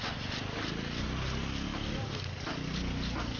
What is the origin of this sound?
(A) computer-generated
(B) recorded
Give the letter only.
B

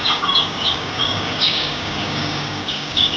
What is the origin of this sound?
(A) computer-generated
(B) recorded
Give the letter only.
A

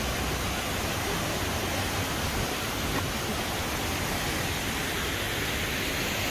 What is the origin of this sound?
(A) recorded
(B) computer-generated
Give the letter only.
A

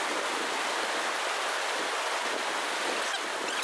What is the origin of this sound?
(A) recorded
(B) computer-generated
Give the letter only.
A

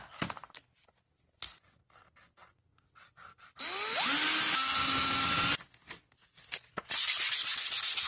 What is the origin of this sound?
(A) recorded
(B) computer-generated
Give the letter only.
A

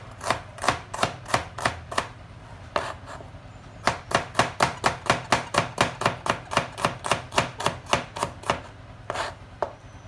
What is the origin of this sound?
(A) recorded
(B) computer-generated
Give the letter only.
A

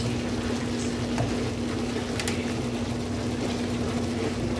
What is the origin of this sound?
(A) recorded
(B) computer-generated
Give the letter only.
A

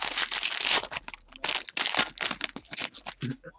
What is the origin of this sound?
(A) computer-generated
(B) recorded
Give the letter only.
B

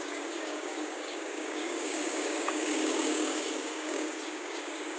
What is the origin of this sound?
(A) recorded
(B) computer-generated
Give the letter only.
B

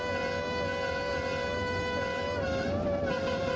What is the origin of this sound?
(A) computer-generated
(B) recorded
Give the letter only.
B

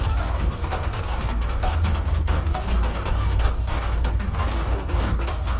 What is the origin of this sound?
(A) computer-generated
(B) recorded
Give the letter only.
A